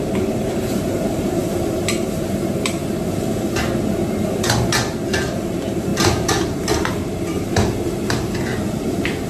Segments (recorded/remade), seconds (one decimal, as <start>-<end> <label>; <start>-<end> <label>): 0.0-2.8 remade; 2.8-5.3 recorded; 5.3-9.3 remade